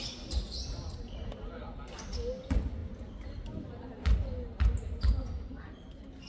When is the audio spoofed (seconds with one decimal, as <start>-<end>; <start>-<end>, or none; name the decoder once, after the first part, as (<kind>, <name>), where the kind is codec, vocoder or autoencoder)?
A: none

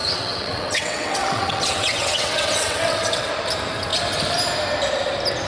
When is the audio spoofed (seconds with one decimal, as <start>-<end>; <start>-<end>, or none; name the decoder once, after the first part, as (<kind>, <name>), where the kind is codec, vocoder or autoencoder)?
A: 0.0-3.3 (vocoder, WaveNeXt)

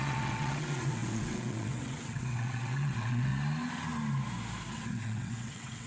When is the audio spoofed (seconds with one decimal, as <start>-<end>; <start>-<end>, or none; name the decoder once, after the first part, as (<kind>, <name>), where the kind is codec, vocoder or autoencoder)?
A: 0.0-3.3 (vocoder, WaveNeXt); 4.7-5.9

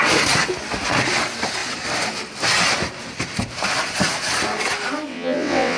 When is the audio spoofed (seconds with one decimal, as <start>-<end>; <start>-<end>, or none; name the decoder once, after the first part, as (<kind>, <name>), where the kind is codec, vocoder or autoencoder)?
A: 5.1-5.8 (vocoder, WaveNeXt)

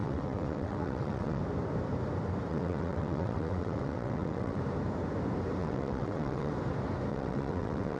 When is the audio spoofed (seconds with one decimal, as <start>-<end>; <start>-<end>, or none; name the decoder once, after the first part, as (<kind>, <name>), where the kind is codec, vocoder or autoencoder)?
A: 0.0-1.4 (vocoder, WaveNeXt); 2.5-4.6; 5.6-6.5; 7.1-8.0